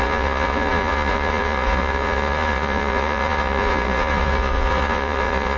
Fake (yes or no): yes